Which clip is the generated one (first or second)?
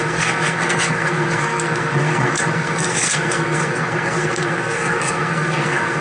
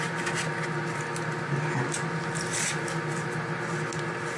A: first